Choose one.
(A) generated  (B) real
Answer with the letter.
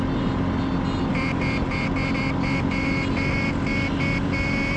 B